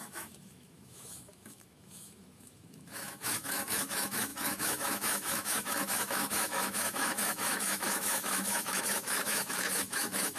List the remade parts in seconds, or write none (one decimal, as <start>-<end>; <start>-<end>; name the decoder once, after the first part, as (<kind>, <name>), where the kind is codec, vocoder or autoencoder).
0.0-10.4 (autoencoder, DAC-VAE)

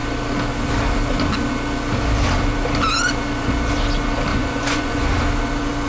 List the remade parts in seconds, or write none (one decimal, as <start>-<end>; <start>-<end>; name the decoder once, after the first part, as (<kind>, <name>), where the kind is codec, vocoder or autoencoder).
4.3-5.1 (vocoder, Vocos)

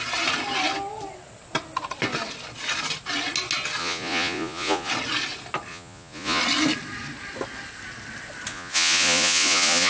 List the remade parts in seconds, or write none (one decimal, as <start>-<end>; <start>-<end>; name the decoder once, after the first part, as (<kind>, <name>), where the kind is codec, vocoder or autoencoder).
3.8-4.9 (vocoder, Vocos); 5.7-6.4; 8.5-9.9

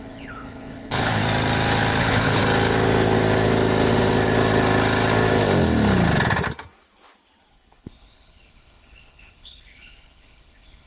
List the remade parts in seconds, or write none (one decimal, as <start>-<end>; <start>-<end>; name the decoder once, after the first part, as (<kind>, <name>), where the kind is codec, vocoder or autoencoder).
0.0-1.2 (codec, HILCodec); 2.0-2.4; 7.5-10.9

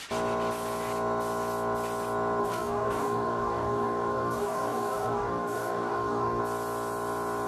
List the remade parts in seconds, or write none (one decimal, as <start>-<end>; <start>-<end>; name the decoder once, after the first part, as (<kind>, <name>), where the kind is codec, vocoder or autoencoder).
2.4-6.4 (codec, DAC)

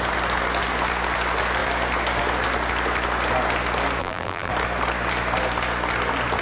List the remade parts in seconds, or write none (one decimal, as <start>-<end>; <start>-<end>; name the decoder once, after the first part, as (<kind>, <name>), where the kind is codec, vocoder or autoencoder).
4.0-4.5 (vocoder, BigVGAN v2)